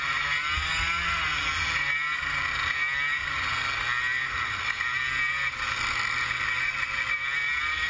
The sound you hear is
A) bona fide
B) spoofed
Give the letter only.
A